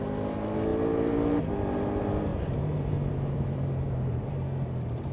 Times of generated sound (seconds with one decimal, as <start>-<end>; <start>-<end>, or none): 2.3-4.3